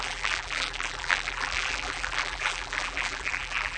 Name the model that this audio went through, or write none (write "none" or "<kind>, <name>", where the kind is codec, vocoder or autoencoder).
vocoder, BigVGAN v2